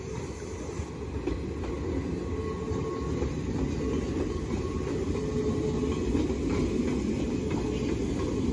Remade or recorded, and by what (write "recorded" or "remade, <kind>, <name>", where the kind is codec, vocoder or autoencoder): recorded